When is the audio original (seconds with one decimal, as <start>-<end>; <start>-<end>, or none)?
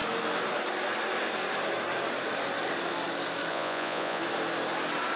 0.0-3.5; 4.2-5.2